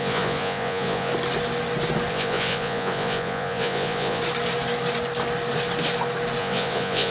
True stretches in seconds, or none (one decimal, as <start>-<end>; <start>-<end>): 1.1-2.1; 4.2-6.4